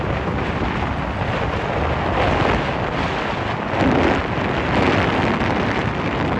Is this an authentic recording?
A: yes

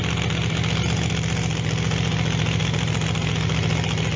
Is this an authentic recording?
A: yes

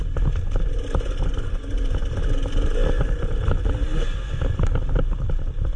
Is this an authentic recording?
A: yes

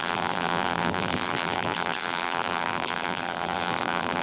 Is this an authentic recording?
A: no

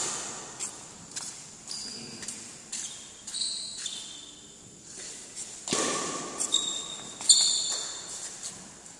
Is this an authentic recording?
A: no